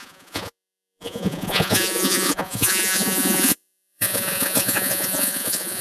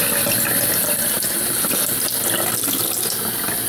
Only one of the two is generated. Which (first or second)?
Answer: first